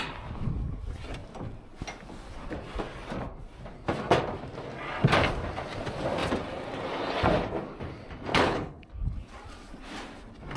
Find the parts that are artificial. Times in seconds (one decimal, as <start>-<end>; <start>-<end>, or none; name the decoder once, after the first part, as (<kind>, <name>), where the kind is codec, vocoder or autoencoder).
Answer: 8.3-8.9 (codec, HILCodec)